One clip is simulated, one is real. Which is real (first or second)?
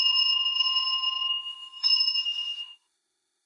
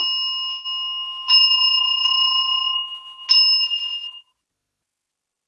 second